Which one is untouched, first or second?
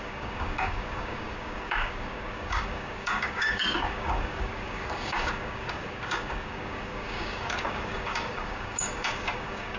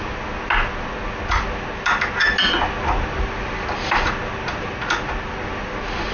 second